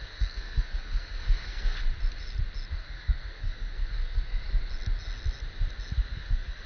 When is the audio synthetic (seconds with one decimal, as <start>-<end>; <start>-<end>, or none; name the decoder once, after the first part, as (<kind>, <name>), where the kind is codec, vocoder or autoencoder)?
0.0-1.8 (codec, SNAC); 2.7-4.4; 6.1-6.7